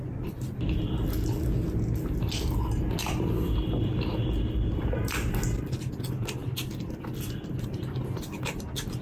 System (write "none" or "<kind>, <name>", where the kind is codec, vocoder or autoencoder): none